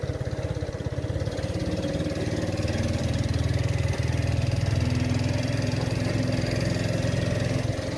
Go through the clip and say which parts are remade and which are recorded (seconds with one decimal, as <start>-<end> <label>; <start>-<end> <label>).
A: 0.0-8.0 recorded